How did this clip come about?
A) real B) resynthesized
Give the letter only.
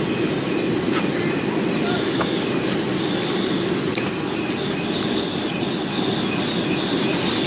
A